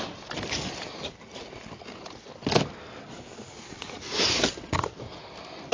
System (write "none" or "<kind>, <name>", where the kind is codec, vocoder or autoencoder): none